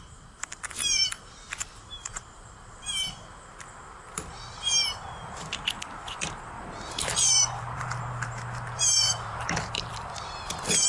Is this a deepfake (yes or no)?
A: yes